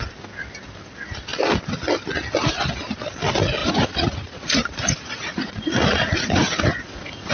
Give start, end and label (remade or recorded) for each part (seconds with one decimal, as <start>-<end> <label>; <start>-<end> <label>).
0.0-3.6 recorded; 3.6-7.3 remade

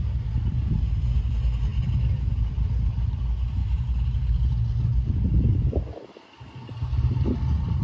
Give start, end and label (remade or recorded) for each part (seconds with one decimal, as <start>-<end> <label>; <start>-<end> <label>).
0.0-7.8 recorded